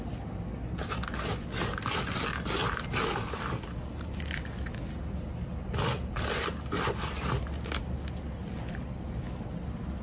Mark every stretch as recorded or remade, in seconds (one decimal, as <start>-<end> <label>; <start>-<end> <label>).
0.0-10.0 recorded